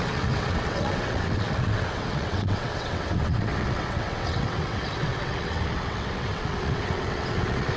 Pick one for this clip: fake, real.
fake